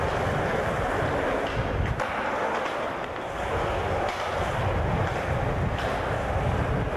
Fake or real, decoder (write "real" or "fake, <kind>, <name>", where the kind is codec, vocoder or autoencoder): real